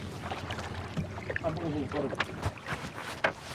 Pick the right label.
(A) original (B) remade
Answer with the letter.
A